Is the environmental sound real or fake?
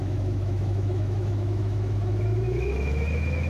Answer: fake